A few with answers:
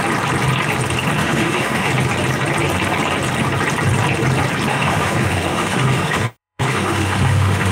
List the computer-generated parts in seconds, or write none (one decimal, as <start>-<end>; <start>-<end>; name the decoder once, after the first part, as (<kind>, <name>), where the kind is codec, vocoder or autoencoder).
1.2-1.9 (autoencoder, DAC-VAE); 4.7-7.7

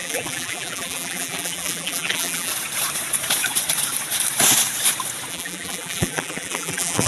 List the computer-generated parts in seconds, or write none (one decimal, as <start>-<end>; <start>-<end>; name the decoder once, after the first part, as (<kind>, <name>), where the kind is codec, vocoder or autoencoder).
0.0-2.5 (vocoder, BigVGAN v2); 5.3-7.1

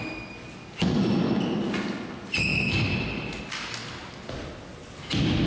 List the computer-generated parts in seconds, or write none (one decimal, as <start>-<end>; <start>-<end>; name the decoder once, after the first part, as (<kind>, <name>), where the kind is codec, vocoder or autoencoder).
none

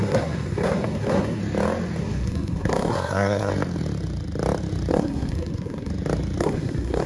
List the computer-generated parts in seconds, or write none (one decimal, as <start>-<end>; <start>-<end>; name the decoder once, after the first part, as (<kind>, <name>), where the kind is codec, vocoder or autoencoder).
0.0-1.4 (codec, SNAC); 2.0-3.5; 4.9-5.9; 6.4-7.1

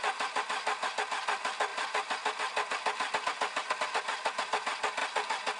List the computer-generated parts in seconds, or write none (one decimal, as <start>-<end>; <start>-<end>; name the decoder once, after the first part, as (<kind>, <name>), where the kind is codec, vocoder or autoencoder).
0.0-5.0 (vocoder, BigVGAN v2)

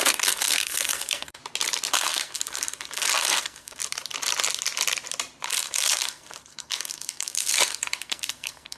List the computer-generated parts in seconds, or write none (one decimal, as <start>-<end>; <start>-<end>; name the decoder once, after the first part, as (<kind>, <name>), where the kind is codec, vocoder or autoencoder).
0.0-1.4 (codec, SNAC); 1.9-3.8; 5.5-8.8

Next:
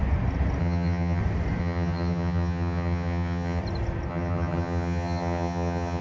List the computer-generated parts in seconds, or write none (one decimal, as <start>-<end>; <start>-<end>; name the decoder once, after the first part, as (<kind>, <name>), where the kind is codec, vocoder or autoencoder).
0.6-1.2 (vocoder, HiFi-GAN); 1.6-3.6; 4.1-6.0